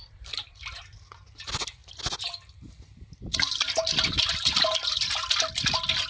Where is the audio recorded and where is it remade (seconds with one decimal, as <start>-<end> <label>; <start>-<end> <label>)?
0.0-6.1 recorded